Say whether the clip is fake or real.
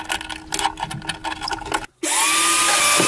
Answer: real